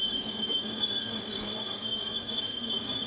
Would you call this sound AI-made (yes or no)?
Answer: yes